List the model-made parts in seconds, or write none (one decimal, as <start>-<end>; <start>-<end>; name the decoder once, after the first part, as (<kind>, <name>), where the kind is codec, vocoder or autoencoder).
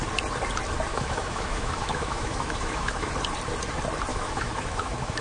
0.9-3.1 (autoencoder, DAC-VAE); 4.1-5.2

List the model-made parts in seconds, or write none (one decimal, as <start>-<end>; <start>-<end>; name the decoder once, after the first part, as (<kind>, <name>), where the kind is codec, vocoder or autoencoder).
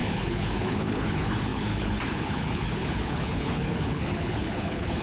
0.0-5.0 (codec, HILCodec)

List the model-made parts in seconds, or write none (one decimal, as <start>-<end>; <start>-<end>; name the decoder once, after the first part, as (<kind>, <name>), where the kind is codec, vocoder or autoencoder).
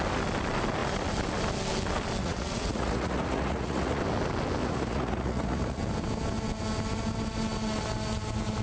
2.2-4.0 (vocoder, Vocos); 4.6-5.8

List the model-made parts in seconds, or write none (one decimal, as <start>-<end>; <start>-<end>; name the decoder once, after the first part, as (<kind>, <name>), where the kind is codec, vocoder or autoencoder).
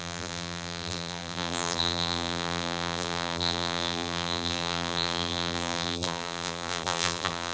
0.0-7.5 (vocoder, BigVGAN v2)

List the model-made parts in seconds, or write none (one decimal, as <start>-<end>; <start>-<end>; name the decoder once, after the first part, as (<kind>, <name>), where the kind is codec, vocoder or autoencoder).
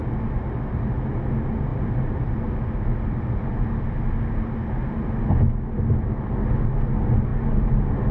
1.7-2.3 (vocoder, BigVGAN v2)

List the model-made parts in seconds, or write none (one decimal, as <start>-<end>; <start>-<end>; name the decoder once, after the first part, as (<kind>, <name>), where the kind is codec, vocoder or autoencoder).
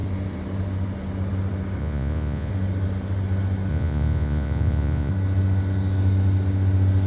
1.8-2.5 (vocoder, Vocos); 3.7-5.1